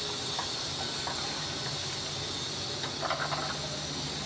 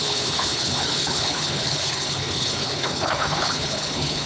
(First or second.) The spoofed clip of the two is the second